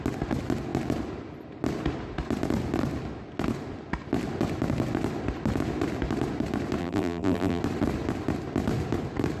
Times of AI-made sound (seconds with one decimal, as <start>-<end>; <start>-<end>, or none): 6.8-7.6